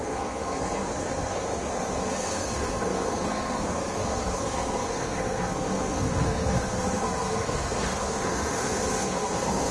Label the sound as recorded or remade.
remade